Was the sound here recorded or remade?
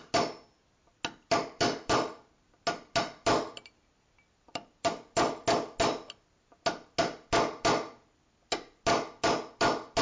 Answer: recorded